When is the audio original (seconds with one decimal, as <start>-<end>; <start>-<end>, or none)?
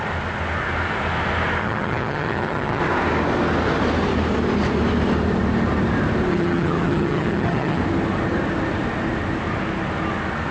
0.0-1.6; 2.8-6.3; 7.8-10.5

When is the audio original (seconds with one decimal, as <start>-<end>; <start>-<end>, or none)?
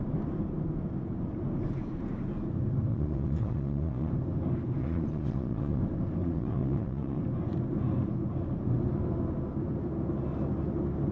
0.0-2.9; 4.1-4.8; 5.8-6.2; 7.2-11.1